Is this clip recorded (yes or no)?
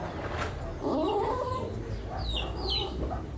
yes